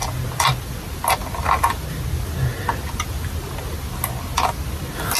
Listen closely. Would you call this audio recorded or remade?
recorded